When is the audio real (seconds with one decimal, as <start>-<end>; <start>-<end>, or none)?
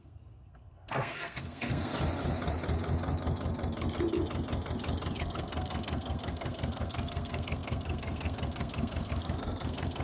1.9-5.2